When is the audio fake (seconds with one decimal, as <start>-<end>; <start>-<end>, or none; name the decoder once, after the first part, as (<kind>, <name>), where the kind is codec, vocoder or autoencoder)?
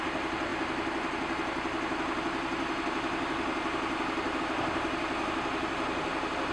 none